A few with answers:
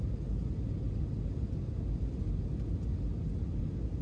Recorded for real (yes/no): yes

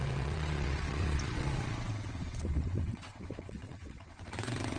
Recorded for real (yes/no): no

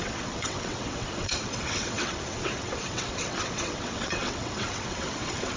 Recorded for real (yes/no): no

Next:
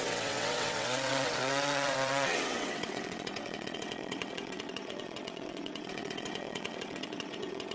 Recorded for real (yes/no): no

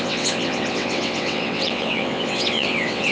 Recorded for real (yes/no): no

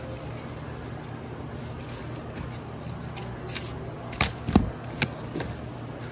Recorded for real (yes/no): yes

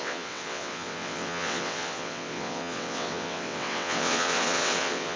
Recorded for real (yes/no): no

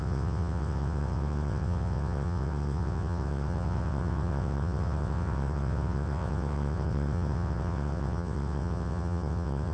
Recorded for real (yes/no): no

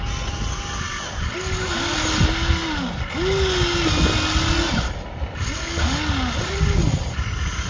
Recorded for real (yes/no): yes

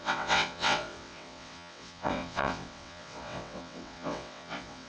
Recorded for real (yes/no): no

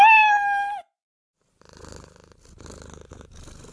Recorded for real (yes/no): yes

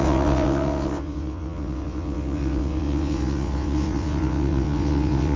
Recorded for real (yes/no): no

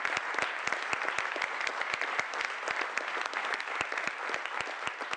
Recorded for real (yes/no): yes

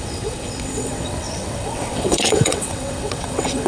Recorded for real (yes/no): no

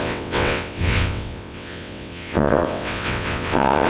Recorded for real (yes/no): no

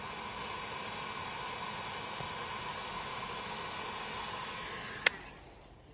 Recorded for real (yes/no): yes